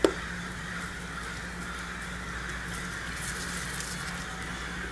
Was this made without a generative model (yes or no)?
yes